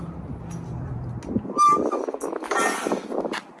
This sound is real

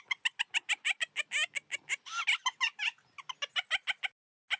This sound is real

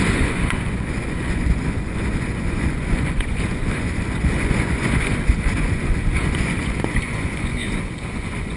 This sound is fake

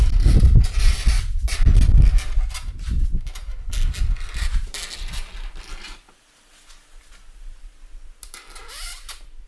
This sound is real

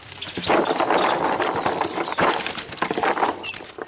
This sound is real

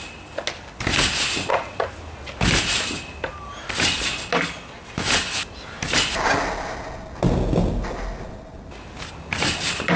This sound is real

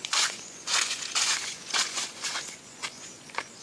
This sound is fake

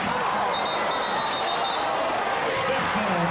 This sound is real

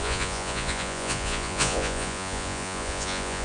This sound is fake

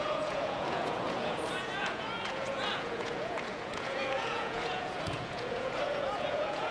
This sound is fake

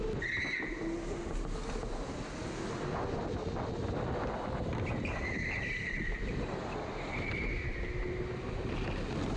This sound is real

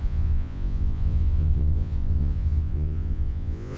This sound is fake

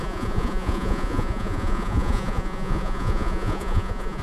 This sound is fake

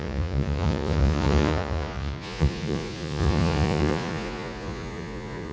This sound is fake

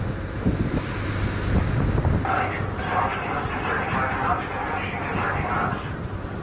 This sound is real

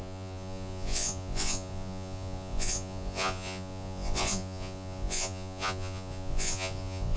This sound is fake